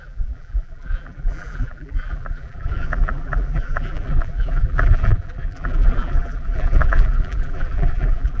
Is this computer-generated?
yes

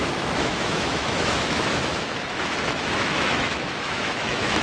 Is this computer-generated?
yes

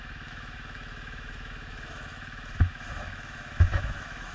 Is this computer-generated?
yes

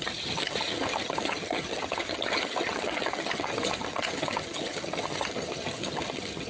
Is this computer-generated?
yes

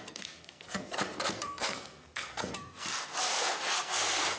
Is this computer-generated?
yes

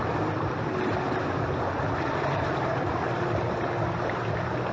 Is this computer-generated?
no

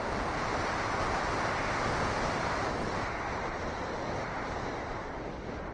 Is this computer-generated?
no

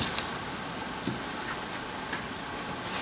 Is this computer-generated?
no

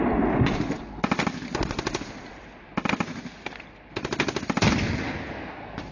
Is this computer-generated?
no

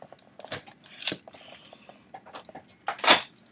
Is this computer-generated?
no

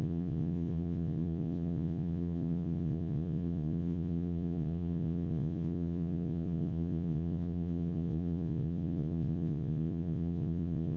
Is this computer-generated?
yes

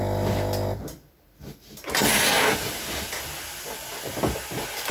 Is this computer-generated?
no